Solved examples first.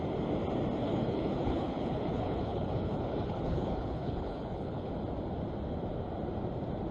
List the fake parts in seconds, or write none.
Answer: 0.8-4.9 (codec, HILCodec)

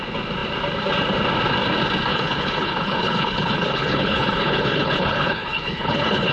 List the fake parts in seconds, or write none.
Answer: 2.1-6.3 (codec, HILCodec)

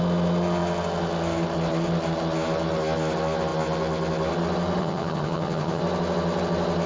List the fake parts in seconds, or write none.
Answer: 4.8-5.8 (vocoder, HiFi-GAN)

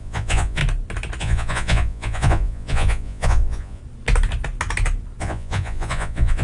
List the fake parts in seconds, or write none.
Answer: 0.0-0.6 (vocoder, Vocos); 1.2-3.8; 5.2-6.4

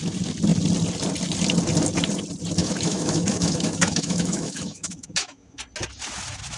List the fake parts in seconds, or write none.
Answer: 2.6-5.6 (autoencoder, DAC-VAE)

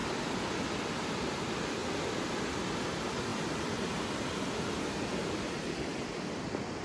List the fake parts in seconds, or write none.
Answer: none

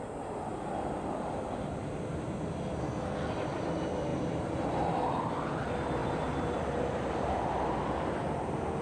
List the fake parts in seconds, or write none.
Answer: 2.8-3.3 (codec, SNAC)

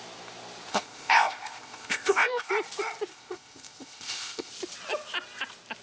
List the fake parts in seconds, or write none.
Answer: 0.7-2.5 (codec, ZipCodec); 3.1-4.5